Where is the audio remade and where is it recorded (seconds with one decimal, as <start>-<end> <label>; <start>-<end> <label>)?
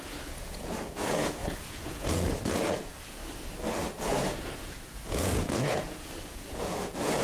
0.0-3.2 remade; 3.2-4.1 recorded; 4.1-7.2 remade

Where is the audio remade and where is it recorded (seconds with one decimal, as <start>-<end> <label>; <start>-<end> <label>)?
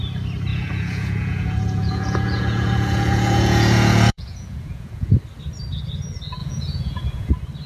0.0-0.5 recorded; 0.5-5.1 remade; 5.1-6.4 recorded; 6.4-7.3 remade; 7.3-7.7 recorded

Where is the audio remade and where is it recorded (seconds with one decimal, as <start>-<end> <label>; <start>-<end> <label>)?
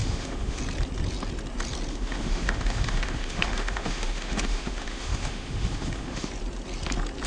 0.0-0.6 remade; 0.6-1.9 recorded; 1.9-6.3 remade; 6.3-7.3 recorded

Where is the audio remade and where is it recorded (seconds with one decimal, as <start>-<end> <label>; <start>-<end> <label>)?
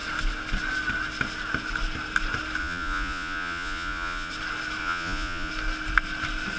0.0-2.6 recorded; 2.6-4.3 remade; 4.3-4.8 recorded; 4.8-5.5 remade; 5.5-6.6 recorded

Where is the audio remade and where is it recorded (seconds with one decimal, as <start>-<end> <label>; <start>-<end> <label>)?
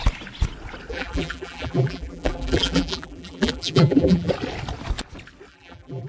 0.0-0.9 recorded; 0.9-4.3 remade; 4.3-5.5 recorded; 5.5-6.1 remade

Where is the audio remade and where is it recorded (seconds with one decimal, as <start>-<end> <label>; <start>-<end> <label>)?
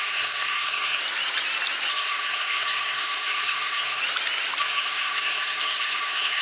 0.0-1.0 remade; 1.0-1.9 recorded; 1.9-4.0 remade; 4.0-4.6 recorded; 4.6-6.4 remade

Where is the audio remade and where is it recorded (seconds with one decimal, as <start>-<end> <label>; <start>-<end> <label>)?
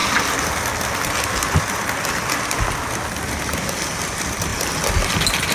0.0-5.5 recorded